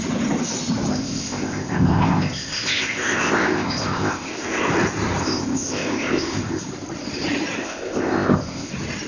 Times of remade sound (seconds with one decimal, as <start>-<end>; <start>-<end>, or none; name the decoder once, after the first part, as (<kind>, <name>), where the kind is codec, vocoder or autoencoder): 0.9-4.7 (codec, ZipCodec); 5.2-6.6; 7.6-8.7